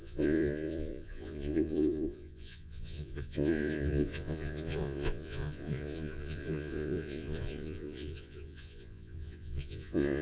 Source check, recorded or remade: remade